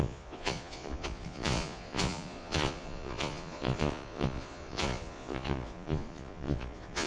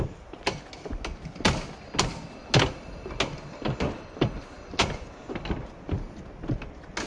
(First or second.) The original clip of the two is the second